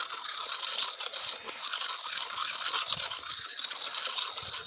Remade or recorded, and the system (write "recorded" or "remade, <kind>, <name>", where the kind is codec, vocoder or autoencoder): recorded